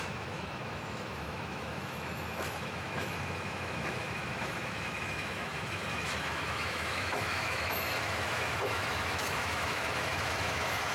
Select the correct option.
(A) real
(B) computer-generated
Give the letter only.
B